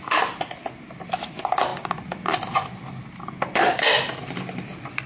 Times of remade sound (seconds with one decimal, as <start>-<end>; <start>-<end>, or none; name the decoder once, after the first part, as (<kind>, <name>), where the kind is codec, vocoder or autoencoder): none